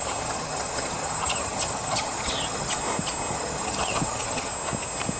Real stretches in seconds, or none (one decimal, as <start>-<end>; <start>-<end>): 2.8-3.3; 4.5-5.2